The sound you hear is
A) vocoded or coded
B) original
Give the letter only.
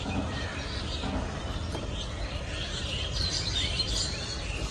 A